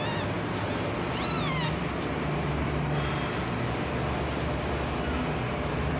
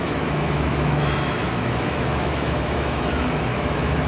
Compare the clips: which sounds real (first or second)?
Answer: first